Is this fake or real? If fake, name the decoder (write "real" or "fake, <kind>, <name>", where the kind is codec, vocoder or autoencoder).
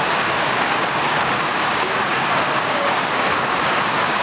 fake, codec, DAC